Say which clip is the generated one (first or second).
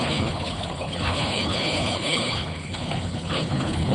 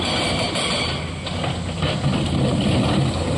first